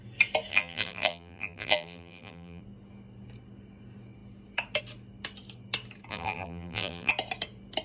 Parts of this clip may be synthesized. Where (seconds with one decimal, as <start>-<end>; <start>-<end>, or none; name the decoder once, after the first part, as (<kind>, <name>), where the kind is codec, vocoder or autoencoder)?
0.5-2.6 (vocoder, BigVGAN v2); 6.1-7.1